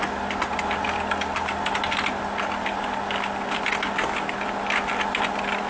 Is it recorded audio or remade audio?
recorded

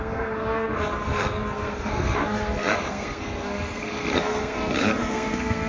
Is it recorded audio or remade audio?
remade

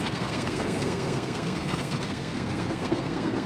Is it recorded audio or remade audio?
remade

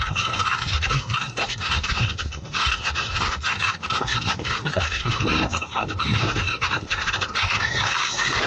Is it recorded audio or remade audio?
remade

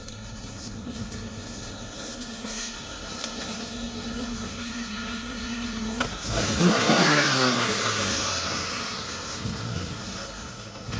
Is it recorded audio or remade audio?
remade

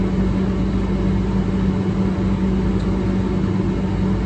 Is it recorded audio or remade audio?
recorded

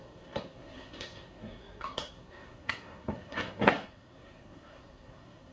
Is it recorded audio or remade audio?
remade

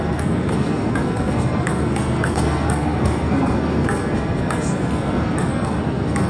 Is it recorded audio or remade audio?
remade